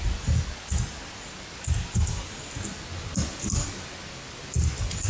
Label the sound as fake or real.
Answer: real